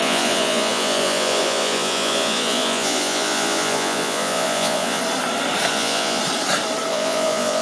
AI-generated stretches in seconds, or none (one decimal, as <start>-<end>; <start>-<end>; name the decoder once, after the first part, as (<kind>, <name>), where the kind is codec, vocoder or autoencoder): 0.0-5.0 (vocoder, Vocos); 5.7-6.2; 6.9-7.6